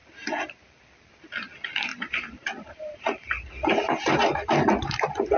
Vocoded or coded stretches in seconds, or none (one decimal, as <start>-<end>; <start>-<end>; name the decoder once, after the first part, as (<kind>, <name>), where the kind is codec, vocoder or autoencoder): 1.9-5.4 (vocoder, BigVGAN v2)